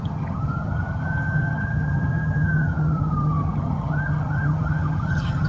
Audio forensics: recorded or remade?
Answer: remade